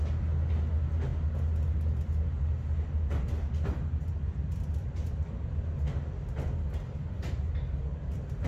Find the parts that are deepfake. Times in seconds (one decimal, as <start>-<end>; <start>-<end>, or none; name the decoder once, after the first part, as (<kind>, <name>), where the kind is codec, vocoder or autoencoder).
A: none